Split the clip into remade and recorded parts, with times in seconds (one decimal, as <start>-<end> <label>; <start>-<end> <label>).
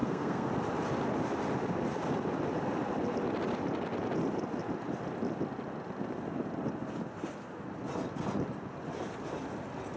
0.0-0.5 remade; 0.5-10.0 recorded